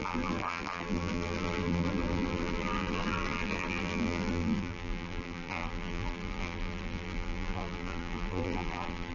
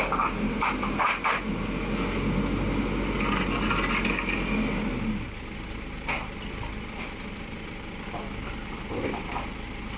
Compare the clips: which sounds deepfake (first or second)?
first